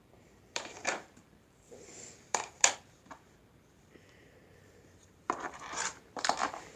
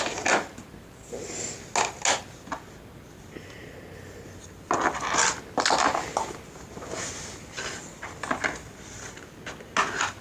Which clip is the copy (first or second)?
first